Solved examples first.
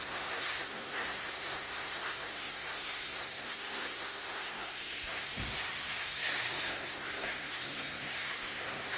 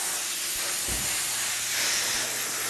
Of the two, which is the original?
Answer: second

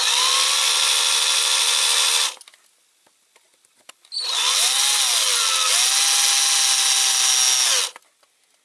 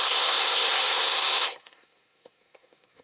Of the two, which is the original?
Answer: first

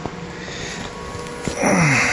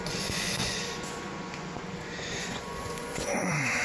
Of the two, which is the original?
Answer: first